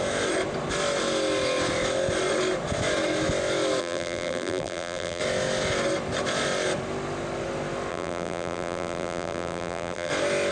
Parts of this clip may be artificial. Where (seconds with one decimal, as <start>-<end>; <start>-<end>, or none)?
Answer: 3.8-5.2; 7.9-10.1